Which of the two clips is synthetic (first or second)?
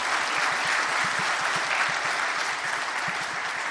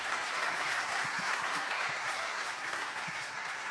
second